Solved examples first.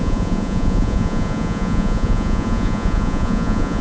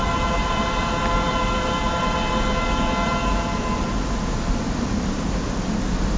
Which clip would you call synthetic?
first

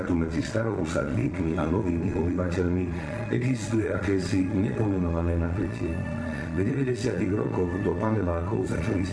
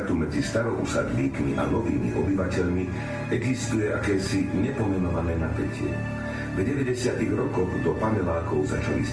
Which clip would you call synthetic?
first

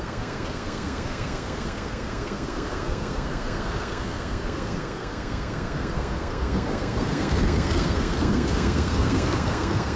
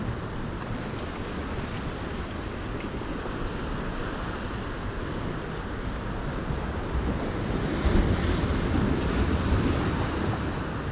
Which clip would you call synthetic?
first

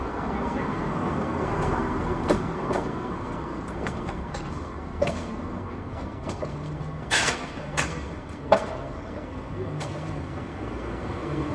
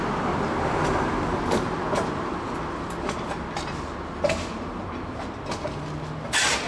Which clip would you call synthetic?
first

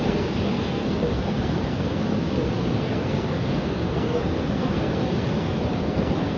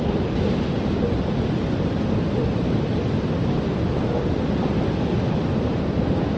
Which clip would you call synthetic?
first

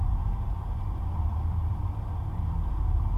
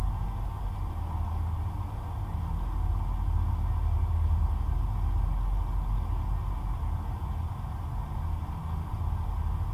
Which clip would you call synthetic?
first